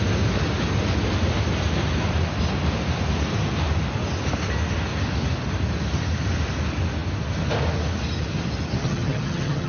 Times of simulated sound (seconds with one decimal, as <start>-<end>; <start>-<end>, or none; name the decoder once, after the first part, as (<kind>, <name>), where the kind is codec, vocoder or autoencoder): 8.8-9.7 (vocoder, HiFi-GAN)